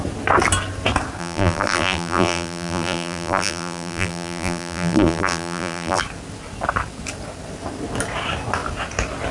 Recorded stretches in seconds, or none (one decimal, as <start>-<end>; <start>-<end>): 0.0-1.2; 6.0-9.3